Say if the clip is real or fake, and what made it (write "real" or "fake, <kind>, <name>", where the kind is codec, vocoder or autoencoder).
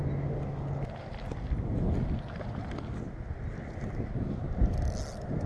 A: real